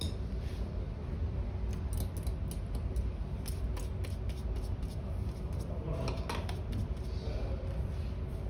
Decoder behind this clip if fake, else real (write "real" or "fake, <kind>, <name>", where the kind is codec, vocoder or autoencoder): real